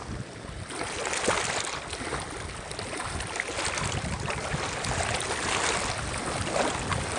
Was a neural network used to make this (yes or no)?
no